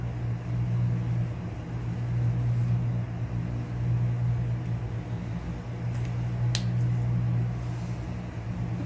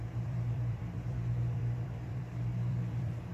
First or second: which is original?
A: first